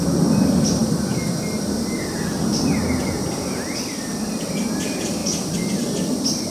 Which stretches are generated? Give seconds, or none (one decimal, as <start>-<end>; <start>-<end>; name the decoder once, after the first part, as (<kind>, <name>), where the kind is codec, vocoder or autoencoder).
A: 0.0-0.8 (vocoder, BigVGAN v2); 3.0-4.1; 4.8-6.5